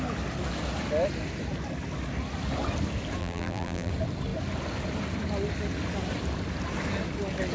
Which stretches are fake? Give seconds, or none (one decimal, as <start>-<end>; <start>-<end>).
3.2-3.9